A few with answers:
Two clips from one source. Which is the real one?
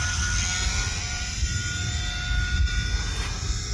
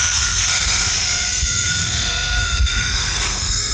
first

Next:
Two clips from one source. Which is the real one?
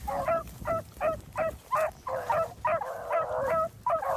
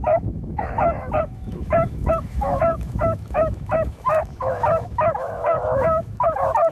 first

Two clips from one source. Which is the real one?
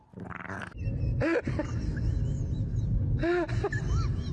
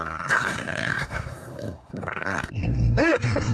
first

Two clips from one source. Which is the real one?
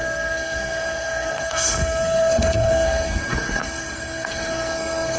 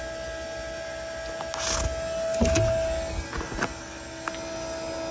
second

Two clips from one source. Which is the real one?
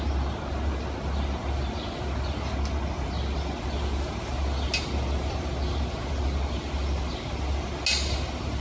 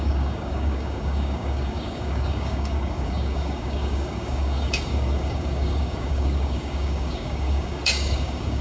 first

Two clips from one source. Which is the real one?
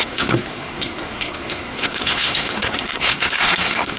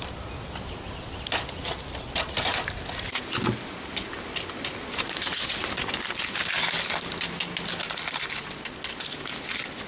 second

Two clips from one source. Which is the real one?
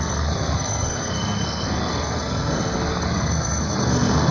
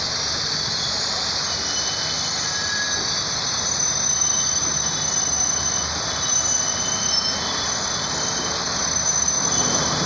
second